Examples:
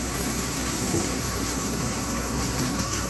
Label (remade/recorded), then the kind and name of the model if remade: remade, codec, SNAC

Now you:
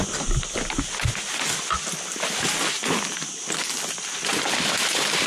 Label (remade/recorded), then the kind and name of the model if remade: recorded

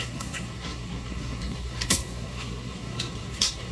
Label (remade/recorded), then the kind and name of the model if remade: remade, codec, SNAC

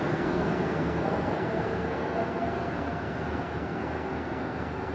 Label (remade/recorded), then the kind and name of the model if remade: remade, codec, SNAC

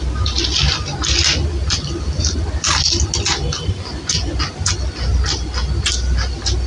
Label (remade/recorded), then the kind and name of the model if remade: recorded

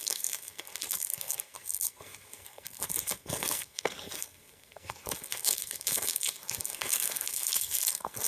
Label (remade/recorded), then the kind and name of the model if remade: remade, codec, SNAC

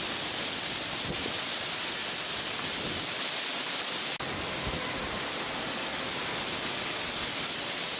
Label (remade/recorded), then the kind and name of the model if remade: recorded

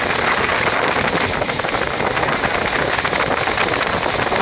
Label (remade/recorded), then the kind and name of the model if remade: recorded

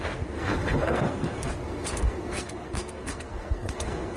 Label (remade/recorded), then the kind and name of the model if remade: remade, codec, SNAC